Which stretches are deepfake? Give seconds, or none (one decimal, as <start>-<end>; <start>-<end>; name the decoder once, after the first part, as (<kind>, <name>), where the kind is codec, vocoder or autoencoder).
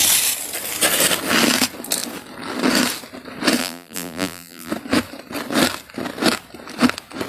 3.6-4.7 (vocoder, BigVGAN v2)